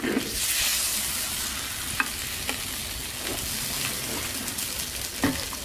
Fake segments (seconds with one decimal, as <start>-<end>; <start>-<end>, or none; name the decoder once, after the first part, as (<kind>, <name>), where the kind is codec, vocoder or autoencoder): none